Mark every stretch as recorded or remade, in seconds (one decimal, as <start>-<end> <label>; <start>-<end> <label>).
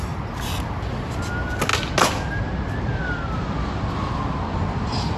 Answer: 0.0-5.2 recorded